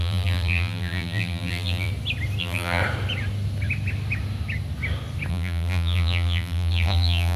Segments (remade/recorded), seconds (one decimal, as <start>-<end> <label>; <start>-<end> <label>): 0.0-1.9 remade; 1.9-2.4 recorded; 2.4-2.8 remade; 2.8-5.3 recorded; 5.3-7.4 remade

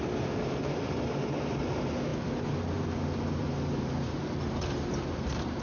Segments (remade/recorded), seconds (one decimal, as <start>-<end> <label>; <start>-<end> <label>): 0.0-2.1 remade; 2.1-3.4 recorded; 3.4-5.6 remade

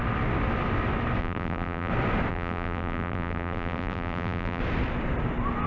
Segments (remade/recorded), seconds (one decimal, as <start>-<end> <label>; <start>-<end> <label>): 0.0-1.2 recorded; 1.2-1.9 remade; 1.9-2.3 recorded; 2.3-4.6 remade; 4.6-5.7 recorded

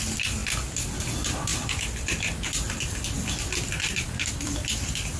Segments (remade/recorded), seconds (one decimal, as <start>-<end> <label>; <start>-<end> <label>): 0.0-0.4 remade; 0.4-1.0 recorded; 1.0-5.2 remade

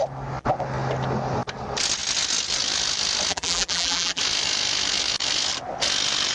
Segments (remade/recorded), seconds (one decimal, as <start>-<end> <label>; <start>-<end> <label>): 0.0-3.3 recorded; 3.3-4.2 remade; 4.2-6.3 recorded

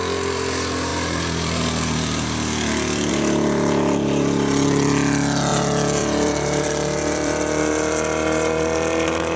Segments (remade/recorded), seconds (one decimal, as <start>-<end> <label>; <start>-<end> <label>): 0.0-5.5 recorded; 5.5-9.4 remade